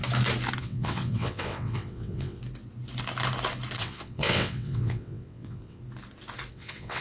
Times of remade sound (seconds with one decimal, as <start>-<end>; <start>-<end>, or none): 0.6-2.4; 3.8-5.8; 6.5-7.0